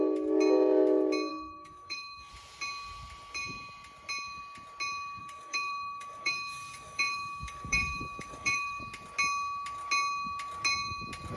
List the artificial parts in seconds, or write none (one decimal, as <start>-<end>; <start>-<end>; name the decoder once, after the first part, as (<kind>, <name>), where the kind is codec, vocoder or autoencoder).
1.3-2.3 (codec, DAC); 5.2-8.8